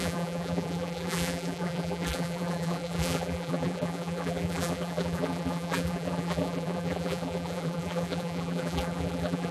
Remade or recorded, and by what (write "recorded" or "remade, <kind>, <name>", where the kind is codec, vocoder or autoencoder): remade, vocoder, BigVGAN v2